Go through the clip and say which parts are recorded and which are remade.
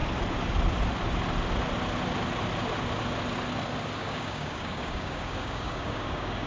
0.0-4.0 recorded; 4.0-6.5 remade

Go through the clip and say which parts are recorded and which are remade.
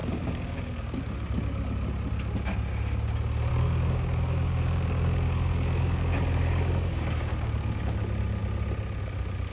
0.0-1.0 remade; 1.0-3.5 recorded; 3.5-7.8 remade; 7.8-9.5 recorded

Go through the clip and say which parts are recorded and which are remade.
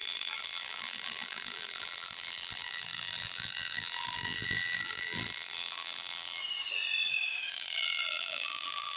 0.0-6.4 remade; 6.4-7.5 recorded; 7.5-9.0 remade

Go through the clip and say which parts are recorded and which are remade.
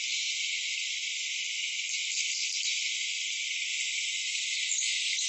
0.0-5.3 recorded